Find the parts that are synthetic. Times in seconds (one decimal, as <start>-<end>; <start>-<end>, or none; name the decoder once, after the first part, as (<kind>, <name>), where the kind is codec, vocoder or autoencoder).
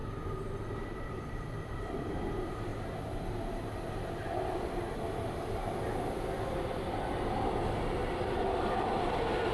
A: 0.8-2.7 (vocoder, BigVGAN v2); 3.9-5.6; 6.8-9.5